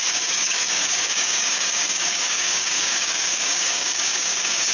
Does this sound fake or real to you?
fake